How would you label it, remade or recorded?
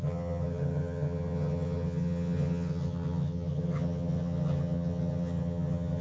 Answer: remade